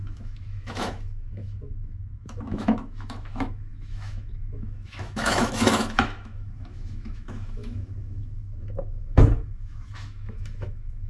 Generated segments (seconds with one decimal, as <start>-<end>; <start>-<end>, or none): 0.0-11.1